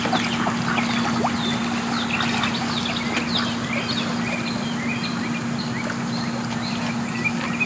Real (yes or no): yes